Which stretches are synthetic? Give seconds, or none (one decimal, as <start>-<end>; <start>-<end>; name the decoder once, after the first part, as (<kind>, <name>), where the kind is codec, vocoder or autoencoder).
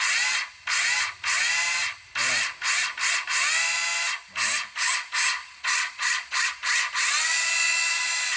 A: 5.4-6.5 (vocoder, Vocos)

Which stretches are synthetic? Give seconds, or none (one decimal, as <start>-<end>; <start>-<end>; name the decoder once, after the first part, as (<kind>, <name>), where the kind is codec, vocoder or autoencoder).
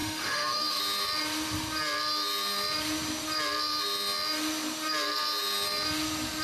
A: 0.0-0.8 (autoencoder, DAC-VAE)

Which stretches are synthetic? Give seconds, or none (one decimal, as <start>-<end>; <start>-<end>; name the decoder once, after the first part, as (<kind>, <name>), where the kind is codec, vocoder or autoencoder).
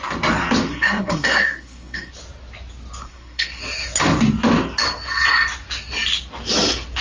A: 0.7-2.1 (codec, SNAC); 3.0-3.6